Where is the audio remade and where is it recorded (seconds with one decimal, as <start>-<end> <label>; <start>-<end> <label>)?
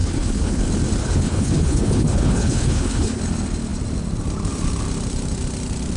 0.0-0.6 remade; 0.6-1.0 recorded; 1.0-3.2 remade; 3.2-6.0 recorded